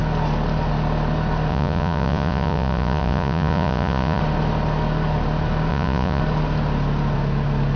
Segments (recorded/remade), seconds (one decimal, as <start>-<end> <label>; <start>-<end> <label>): 0.0-1.5 recorded; 1.5-4.2 remade; 4.2-5.7 recorded; 5.7-6.2 remade; 6.2-7.8 recorded